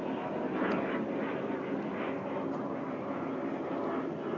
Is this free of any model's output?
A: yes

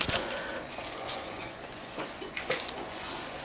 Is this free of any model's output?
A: no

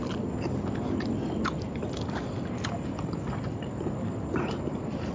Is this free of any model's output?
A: yes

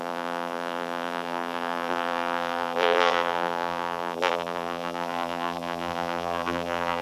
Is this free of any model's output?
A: no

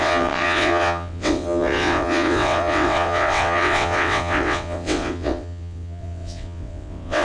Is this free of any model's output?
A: no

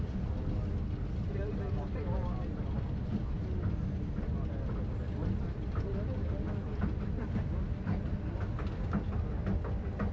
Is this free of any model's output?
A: yes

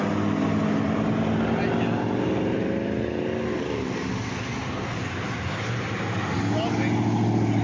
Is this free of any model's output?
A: yes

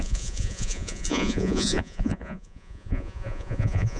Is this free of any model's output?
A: no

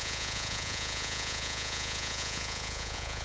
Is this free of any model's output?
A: no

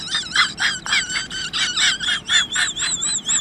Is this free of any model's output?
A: no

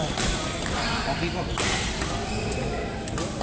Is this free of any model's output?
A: yes